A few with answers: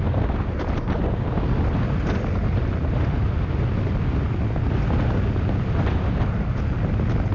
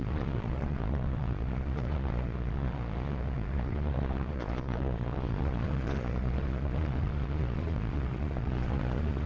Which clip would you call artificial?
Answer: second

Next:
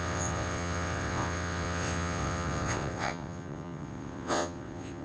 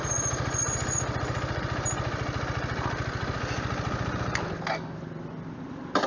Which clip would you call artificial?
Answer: first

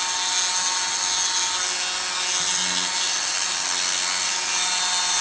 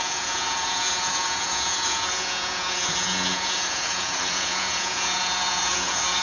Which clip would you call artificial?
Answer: second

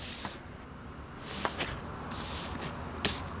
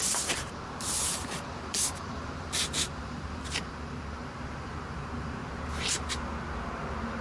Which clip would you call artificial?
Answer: second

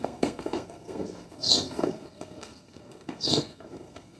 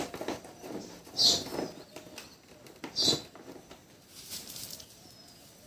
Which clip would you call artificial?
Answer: first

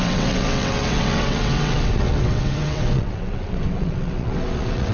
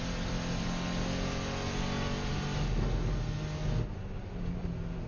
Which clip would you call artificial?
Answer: first